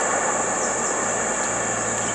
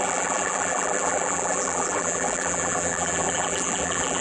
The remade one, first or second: second